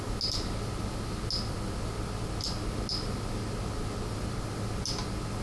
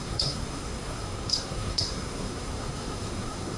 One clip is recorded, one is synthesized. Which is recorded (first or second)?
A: first